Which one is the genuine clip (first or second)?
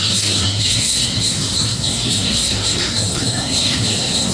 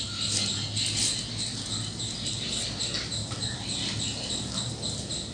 second